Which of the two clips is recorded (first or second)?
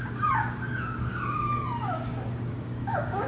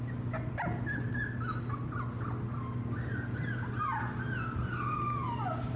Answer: second